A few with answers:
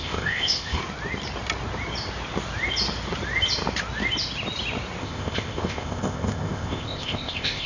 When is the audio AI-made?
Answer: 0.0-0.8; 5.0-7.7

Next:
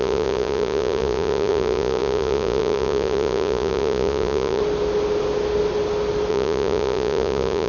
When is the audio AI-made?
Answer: 0.0-4.6; 6.3-7.7

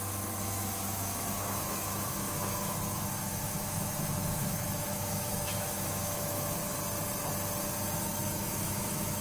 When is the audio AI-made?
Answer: 0.0-6.6; 8.2-9.2

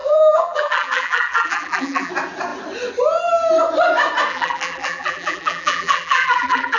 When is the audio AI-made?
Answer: 0.0-2.1; 4.3-6.8

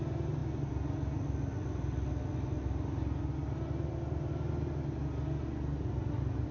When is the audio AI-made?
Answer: none

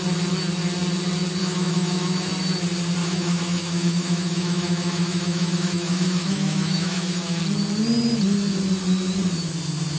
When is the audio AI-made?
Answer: 1.4-2.3; 3.0-7.4

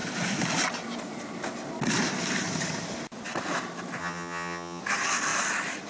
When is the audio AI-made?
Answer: 4.0-4.8

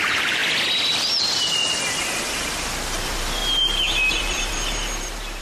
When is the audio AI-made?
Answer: 0.0-0.4; 2.3-3.4; 4.2-5.4